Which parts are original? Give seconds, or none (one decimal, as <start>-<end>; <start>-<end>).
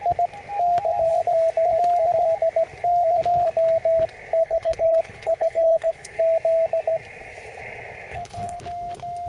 0.0-4.4; 6.2-8.1; 8.6-9.3